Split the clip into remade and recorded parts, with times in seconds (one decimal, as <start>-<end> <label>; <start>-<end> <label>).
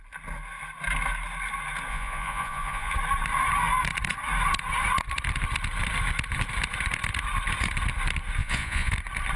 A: 0.0-1.9 recorded; 1.9-2.9 remade; 2.9-8.4 recorded; 8.4-8.9 remade; 8.9-9.4 recorded